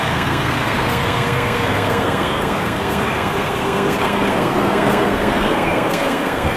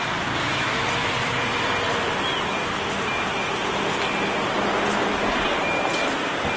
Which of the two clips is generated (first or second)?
first